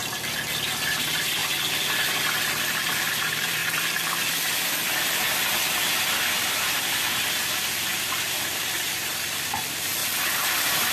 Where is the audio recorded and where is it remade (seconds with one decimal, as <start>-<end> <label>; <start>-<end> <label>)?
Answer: 0.0-0.9 recorded; 0.9-1.4 remade; 1.4-2.5 recorded; 2.5-3.6 remade; 3.6-7.7 recorded; 7.7-10.0 remade; 10.0-10.9 recorded